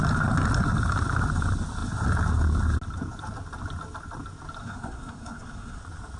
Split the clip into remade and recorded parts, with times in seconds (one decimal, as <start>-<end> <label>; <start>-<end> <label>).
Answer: 0.0-4.6 recorded; 4.6-5.8 remade; 5.8-6.2 recorded